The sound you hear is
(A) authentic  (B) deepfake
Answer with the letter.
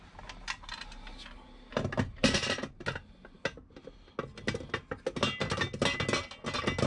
A